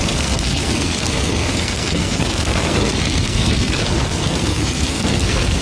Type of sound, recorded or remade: remade